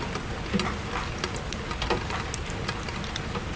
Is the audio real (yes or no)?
yes